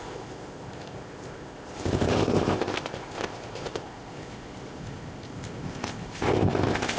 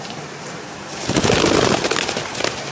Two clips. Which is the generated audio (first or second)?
first